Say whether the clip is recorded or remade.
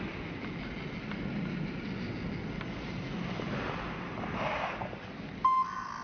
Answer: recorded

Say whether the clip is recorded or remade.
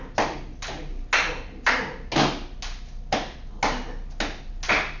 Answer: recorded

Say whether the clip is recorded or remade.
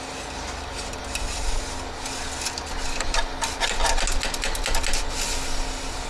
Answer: recorded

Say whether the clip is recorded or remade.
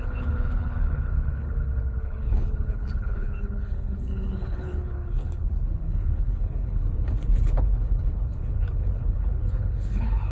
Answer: remade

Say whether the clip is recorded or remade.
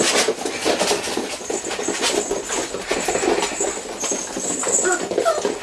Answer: recorded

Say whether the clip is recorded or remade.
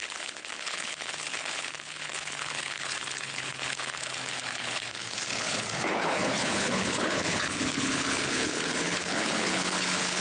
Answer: remade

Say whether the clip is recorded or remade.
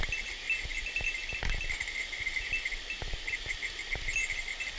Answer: recorded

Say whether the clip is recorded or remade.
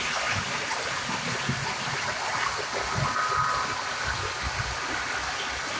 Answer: recorded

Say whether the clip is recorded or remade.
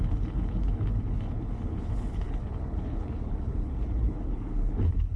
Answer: remade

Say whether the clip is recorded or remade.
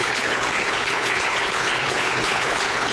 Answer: remade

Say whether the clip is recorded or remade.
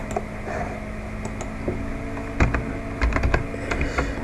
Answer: recorded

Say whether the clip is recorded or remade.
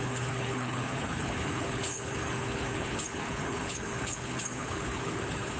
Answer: remade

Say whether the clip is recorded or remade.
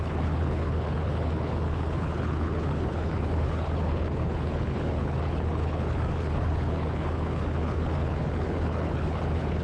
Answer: remade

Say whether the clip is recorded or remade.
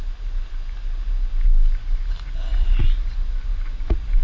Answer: recorded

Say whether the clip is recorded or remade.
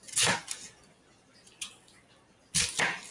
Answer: recorded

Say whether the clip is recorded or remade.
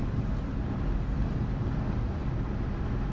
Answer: recorded